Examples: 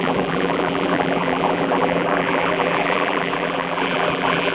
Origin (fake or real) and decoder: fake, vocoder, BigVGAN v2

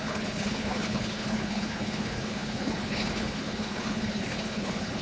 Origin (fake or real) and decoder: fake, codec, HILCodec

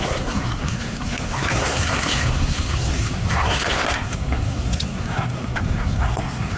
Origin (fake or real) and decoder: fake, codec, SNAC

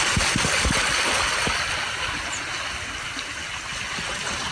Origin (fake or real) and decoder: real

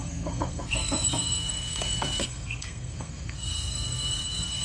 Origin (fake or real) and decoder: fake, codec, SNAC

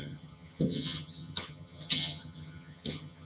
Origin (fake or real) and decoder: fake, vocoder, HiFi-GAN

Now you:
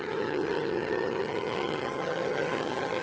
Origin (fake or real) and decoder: fake, vocoder, HiFi-GAN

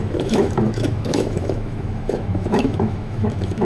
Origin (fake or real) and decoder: fake, autoencoder, DAC-VAE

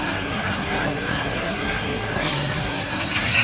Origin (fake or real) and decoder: fake, codec, SNAC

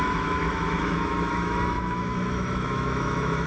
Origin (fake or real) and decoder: fake, autoencoder, DAC-VAE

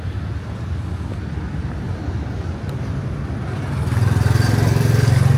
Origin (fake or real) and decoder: real